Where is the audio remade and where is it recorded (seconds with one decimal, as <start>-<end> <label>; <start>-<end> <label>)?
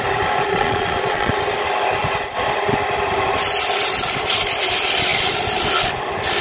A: 0.0-0.5 recorded; 0.5-1.3 remade; 1.3-6.4 recorded